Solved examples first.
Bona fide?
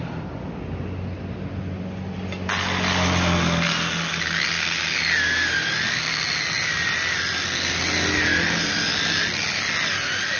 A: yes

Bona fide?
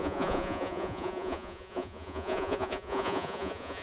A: no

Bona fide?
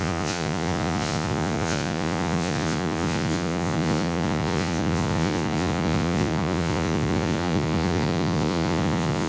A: no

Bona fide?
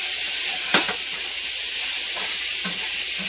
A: yes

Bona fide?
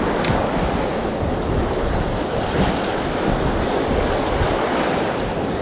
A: yes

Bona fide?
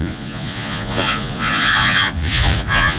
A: no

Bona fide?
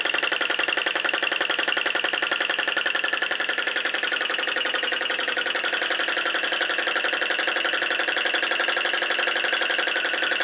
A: yes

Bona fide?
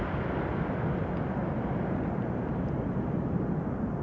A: yes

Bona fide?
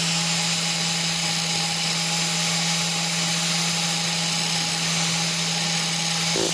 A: yes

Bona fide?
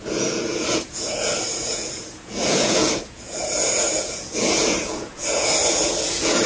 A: no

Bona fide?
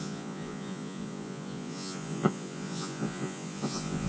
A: no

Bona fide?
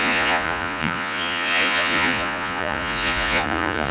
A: no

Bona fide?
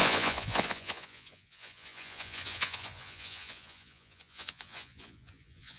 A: no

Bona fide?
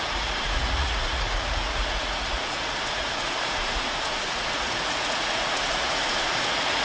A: no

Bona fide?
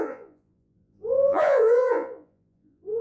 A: no